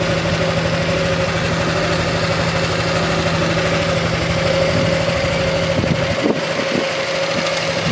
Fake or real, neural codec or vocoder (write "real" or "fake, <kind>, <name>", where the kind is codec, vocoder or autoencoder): real